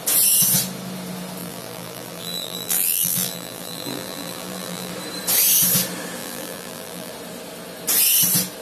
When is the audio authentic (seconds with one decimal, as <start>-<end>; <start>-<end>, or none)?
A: 0.0-1.4; 4.9-6.2; 7.1-8.6